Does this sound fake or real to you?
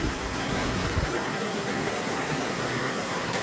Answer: fake